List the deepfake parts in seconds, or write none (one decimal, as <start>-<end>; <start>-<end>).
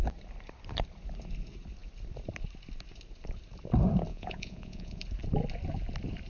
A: 4.1-5.0